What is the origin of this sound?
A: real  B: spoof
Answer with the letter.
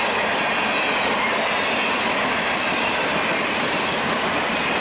A